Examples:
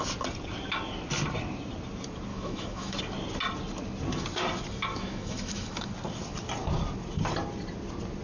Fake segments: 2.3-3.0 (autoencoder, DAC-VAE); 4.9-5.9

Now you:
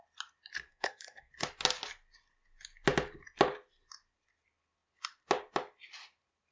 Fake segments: 0.7-1.3 (codec, SNAC)

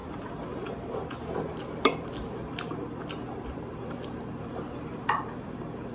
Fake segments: none

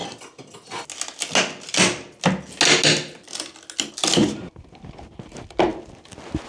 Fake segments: none

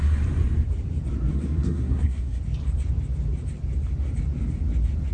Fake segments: 1.3-2.4 (codec, SNAC)